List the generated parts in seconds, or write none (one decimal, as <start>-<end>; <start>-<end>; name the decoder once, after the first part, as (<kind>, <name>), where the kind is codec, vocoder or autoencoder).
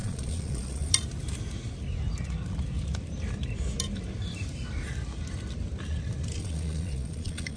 0.0-0.9 (vocoder, Vocos); 6.4-7.6